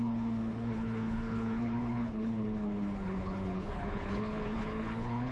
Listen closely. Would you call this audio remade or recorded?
remade